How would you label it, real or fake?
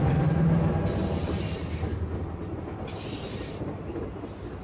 real